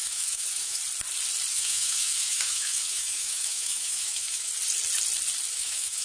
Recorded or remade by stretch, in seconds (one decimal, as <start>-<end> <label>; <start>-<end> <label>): 0.0-0.8 remade; 0.8-1.5 recorded; 1.5-4.5 remade; 4.5-5.5 recorded; 5.5-6.0 remade